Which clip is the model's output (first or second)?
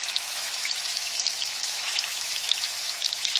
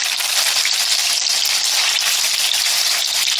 first